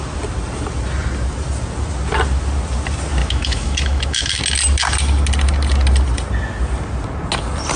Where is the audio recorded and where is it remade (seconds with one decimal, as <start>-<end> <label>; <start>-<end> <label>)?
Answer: 0.0-3.2 recorded; 3.2-4.4 remade; 4.4-7.8 recorded